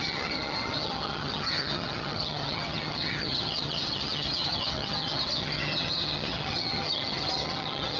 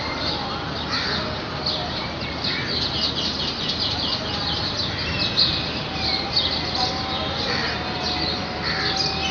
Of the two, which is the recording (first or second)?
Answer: second